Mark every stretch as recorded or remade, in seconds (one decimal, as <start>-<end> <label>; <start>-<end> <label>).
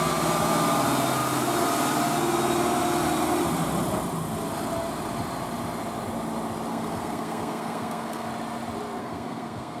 0.0-6.7 recorded; 6.7-8.3 remade; 8.3-9.0 recorded; 9.0-9.8 remade